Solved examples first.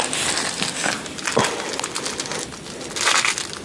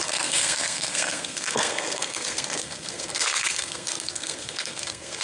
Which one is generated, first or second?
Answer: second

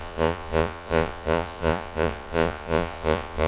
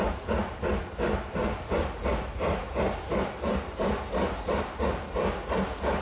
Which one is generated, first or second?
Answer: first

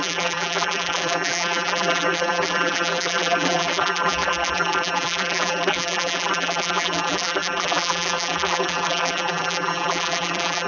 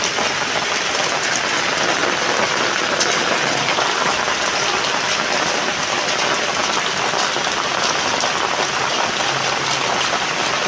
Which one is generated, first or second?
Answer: first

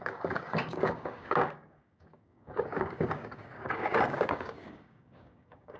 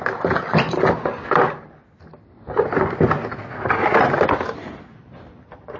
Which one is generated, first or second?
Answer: first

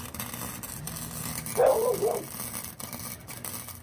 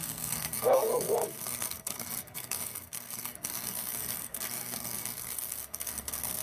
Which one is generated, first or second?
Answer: second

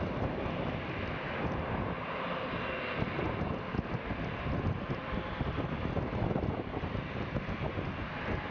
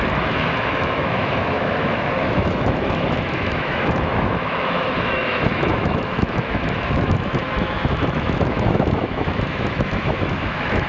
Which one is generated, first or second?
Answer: second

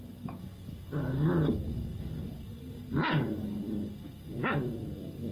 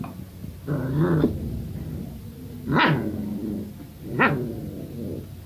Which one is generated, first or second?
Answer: first